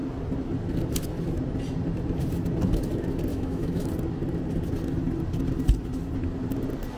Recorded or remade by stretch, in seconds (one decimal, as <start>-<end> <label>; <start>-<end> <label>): 0.0-3.3 recorded; 3.3-3.9 remade; 3.9-7.0 recorded